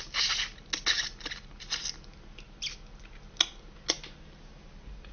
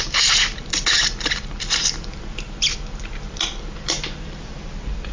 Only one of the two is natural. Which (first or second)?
first